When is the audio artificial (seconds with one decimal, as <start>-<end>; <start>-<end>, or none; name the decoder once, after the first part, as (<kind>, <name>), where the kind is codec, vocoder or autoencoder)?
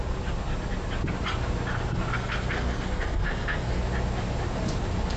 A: 2.1-3.8 (codec, SNAC)